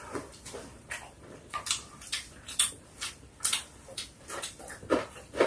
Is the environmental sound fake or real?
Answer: fake